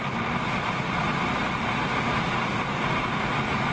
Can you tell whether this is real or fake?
real